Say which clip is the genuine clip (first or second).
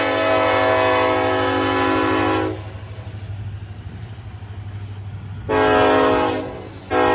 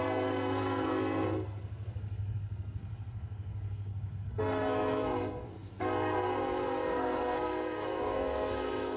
first